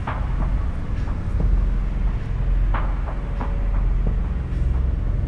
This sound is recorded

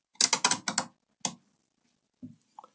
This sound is recorded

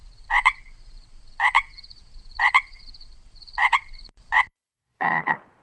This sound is remade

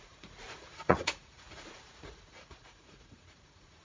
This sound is remade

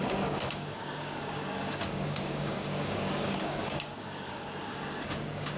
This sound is remade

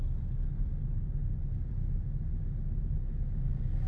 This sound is recorded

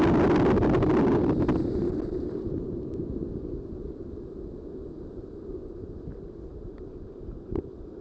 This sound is recorded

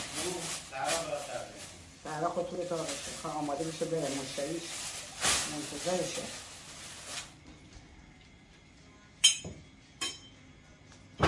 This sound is recorded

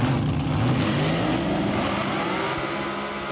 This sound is recorded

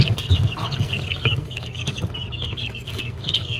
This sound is remade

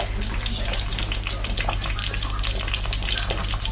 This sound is recorded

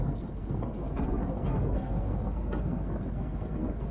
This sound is remade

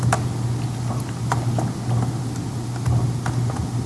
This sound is recorded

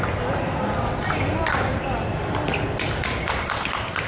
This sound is recorded